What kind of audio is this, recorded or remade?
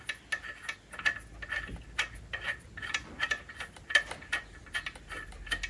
recorded